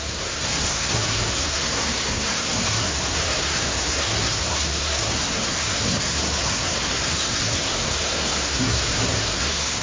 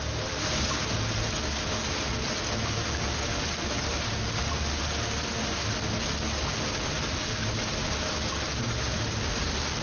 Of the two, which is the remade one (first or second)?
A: first